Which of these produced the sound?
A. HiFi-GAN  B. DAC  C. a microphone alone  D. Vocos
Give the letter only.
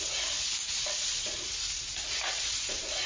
D